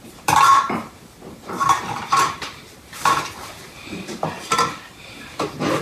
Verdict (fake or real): fake